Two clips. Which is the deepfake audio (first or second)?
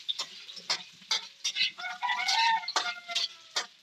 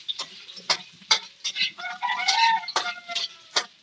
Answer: second